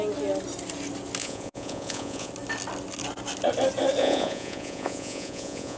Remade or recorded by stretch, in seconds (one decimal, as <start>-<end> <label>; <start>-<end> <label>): 0.0-1.2 recorded; 1.2-2.3 remade; 2.3-4.0 recorded; 4.0-5.8 remade